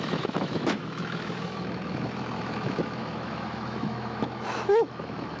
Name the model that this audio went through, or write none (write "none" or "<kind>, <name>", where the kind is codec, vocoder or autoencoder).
autoencoder, DAC-VAE